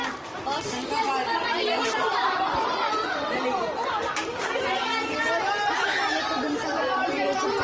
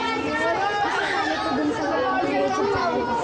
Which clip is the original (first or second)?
second